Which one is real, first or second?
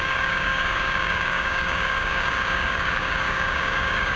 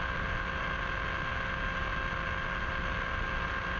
second